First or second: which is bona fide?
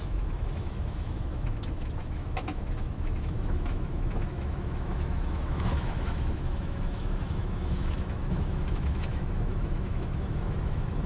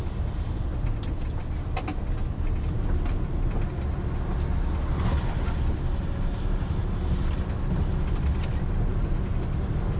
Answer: second